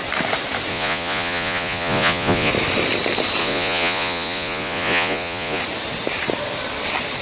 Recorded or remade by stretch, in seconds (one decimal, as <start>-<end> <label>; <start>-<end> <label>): 0.0-0.7 recorded; 0.7-2.5 remade; 2.5-3.4 recorded; 3.4-5.6 remade; 5.6-7.2 recorded